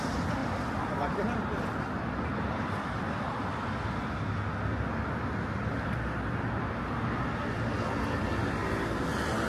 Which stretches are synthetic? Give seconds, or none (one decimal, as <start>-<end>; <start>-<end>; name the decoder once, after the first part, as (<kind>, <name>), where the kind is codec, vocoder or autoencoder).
none